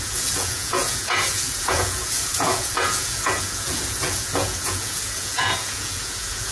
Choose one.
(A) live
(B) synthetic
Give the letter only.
B